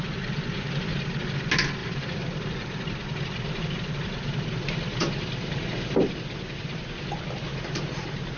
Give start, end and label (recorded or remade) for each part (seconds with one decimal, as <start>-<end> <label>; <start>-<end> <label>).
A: 0.0-1.8 recorded; 1.8-3.1 remade; 3.1-4.9 recorded; 4.9-7.1 remade; 7.1-7.5 recorded; 7.5-8.4 remade